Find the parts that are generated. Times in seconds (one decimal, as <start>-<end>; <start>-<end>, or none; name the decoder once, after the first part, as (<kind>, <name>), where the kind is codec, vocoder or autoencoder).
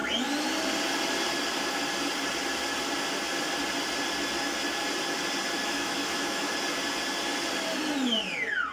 5.6-6.5 (autoencoder, DAC-VAE)